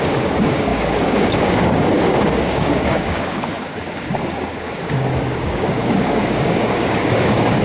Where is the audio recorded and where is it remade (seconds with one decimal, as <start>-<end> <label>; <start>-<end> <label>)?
0.0-7.6 remade